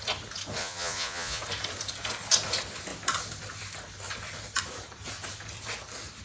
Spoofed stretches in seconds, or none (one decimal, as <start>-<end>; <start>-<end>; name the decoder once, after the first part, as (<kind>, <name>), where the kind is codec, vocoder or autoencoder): 0.6-1.4 (vocoder, Vocos)